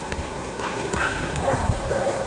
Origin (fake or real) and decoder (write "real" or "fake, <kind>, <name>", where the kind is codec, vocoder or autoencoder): fake, codec, SNAC